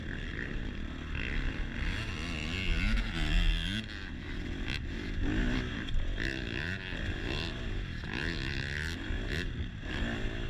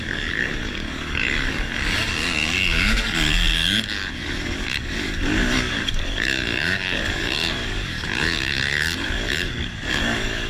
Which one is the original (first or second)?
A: first